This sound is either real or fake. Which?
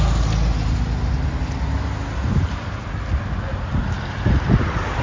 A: real